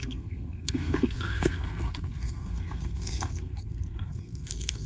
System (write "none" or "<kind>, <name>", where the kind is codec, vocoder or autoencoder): codec, SNAC